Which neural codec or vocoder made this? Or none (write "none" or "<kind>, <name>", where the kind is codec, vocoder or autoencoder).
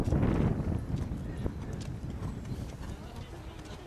none